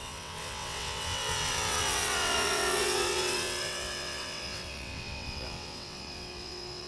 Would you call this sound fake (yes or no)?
yes